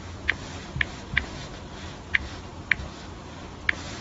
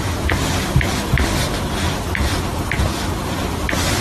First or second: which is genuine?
first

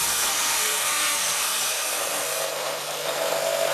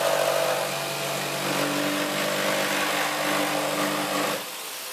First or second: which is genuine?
second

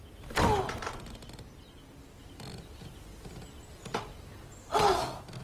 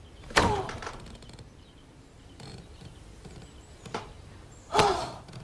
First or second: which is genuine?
first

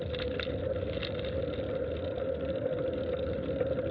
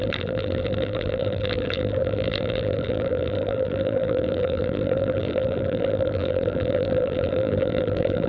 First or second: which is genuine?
first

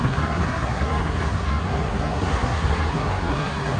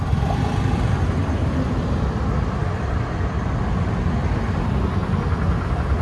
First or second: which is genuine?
second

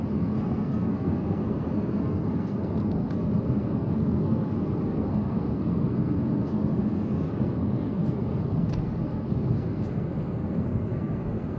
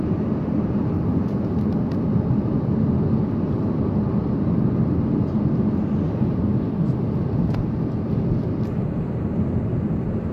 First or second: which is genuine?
second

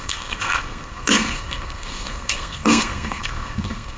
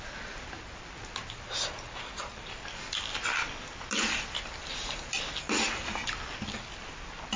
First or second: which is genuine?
second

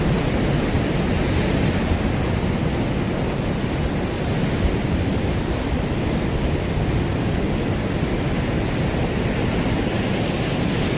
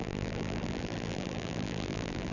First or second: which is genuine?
first